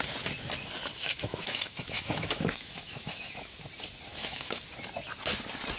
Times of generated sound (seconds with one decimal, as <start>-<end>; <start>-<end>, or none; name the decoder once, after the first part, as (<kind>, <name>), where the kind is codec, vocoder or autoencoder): 0.9-3.6 (autoencoder, DAC-VAE); 4.1-4.6